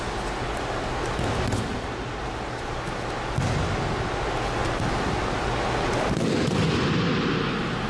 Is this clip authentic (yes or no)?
yes